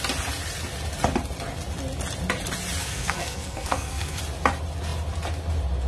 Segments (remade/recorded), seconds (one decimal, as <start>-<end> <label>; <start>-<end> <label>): 0.0-2.8 recorded; 2.8-4.2 remade; 4.2-5.9 recorded